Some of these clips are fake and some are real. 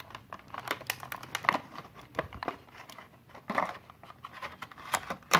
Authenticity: real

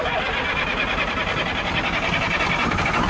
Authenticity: real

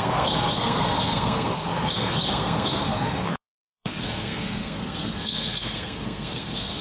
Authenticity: fake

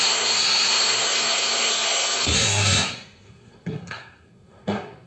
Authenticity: fake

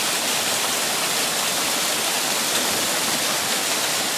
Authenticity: real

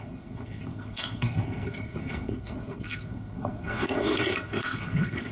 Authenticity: fake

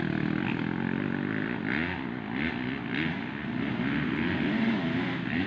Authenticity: real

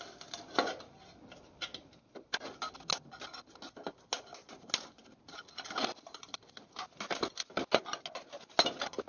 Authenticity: real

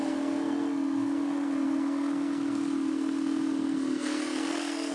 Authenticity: fake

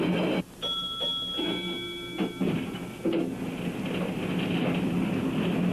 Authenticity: real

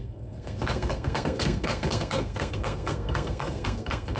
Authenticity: fake